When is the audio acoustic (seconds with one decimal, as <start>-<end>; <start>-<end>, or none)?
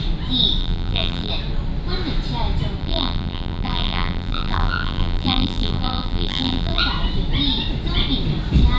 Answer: 0.0-0.6; 1.3-2.8; 6.8-8.8